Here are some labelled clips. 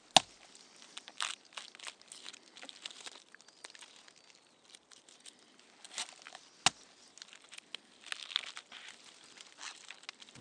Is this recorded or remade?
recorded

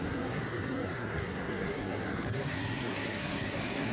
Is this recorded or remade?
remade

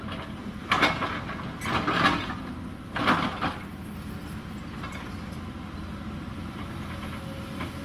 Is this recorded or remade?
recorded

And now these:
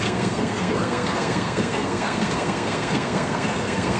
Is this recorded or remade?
remade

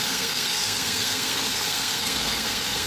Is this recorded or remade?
remade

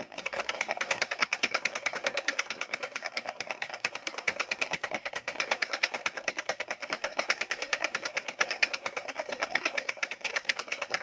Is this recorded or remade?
remade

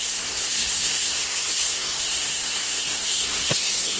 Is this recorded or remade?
remade